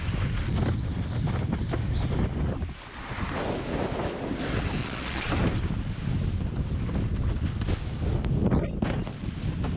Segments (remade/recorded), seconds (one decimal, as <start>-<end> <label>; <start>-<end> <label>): 0.0-4.8 recorded; 4.8-5.3 remade; 5.3-9.8 recorded